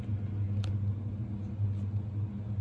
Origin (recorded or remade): recorded